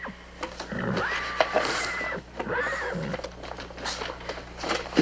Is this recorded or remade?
recorded